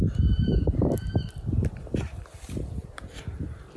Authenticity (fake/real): fake